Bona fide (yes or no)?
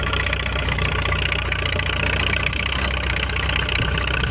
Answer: yes